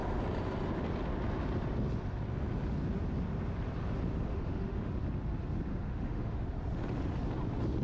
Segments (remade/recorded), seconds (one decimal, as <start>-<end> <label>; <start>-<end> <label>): 0.0-4.3 recorded; 4.3-4.9 remade; 4.9-5.7 recorded; 5.7-6.4 remade; 6.4-7.8 recorded